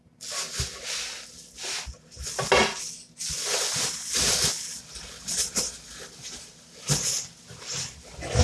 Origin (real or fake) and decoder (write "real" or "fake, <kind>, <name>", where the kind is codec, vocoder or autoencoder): real